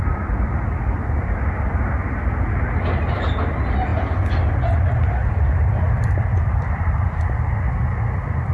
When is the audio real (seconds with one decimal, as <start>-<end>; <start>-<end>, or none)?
0.0-1.0; 1.8-5.2; 7.5-8.5